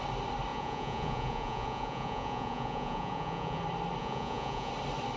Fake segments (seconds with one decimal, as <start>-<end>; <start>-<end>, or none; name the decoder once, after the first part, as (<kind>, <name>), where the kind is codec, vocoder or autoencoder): 0.5-3.6 (vocoder, Vocos); 4.0-4.7